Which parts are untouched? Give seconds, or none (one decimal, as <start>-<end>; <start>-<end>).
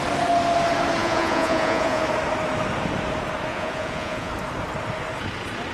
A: 0.0-1.0; 2.0-3.5; 4.3-5.7